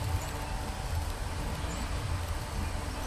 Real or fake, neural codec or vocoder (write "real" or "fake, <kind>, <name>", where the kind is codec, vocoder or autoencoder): real